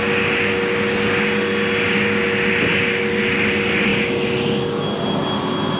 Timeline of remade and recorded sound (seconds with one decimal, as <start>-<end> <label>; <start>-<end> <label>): 0.0-5.8 recorded